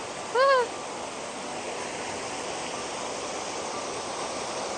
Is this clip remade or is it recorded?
recorded